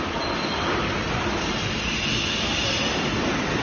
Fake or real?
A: real